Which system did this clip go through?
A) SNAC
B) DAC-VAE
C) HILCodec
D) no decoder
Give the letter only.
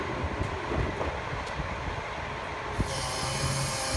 D